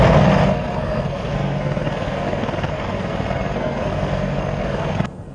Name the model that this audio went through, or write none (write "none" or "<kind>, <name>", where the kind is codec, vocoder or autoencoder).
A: codec, SNAC